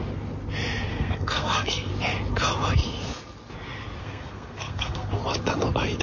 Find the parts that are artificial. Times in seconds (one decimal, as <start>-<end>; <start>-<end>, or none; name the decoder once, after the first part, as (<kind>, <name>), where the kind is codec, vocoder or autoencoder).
0.9-1.9 (codec, SNAC); 4.0-5.2

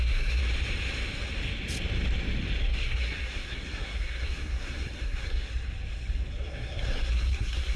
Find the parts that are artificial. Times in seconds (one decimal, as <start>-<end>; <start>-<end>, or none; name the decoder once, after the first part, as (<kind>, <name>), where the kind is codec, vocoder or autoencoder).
0.0-0.4 (codec, SNAC); 2.6-5.5; 6.3-7.8

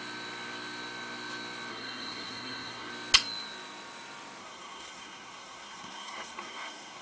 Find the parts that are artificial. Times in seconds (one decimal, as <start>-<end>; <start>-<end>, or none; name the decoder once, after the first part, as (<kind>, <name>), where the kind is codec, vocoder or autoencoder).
1.7-2.9 (codec, SNAC); 4.4-7.0

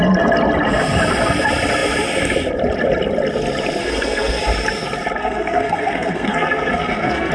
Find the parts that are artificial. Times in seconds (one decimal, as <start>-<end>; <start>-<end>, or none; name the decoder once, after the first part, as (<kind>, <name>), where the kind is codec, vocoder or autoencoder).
3.8-4.4 (codec, SNAC); 5.2-7.3

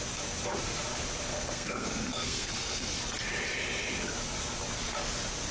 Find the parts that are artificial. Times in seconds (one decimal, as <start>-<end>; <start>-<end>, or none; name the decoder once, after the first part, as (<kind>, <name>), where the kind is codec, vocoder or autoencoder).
1.3-3.0 (codec, SNAC)

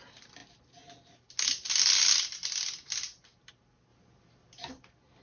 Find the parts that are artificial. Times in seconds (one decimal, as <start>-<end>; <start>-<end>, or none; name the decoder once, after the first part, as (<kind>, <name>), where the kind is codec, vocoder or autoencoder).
none

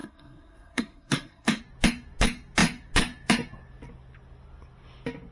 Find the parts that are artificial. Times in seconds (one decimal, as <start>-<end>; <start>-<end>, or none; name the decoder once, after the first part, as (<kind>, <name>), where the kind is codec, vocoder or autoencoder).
0.0-1.6 (codec, SNAC)

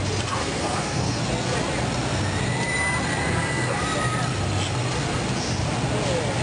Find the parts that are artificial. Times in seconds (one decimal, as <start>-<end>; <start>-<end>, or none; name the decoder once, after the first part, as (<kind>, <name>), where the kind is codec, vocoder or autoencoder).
0.4-1.2 (codec, SNAC); 3.2-3.8